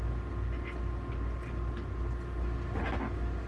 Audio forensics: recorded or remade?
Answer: recorded